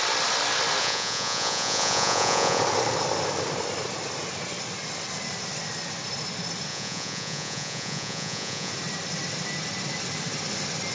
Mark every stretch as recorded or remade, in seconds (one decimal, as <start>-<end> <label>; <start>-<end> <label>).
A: 0.0-0.8 recorded; 0.8-2.6 remade; 2.6-6.7 recorded; 6.7-8.7 remade; 8.7-10.9 recorded